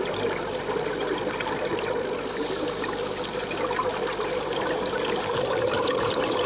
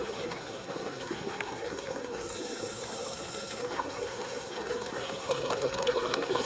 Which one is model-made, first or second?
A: second